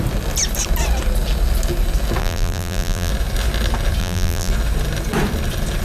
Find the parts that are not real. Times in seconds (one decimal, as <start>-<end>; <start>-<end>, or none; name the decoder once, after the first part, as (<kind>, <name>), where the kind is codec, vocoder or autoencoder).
2.2-3.1 (vocoder, BigVGAN v2); 4.0-4.5